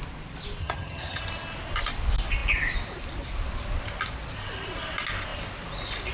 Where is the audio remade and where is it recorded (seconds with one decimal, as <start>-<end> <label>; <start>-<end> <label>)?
0.0-0.6 recorded; 0.6-1.2 remade; 1.2-6.1 recorded